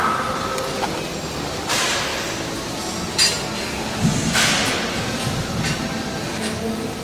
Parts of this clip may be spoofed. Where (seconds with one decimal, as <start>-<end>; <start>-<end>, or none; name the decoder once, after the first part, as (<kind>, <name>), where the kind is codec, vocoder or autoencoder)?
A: none